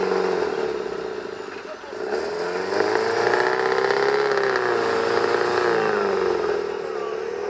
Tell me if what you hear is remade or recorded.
recorded